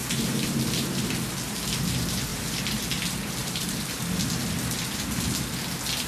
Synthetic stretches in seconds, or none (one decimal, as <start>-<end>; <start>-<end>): 0.0-1.1; 2.3-2.8; 3.4-4.0